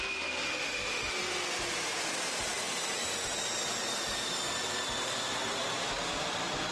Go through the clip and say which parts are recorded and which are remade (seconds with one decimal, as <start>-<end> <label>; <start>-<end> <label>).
0.0-0.5 recorded; 0.5-1.1 remade; 1.1-6.7 recorded